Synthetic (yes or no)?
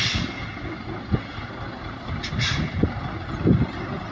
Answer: no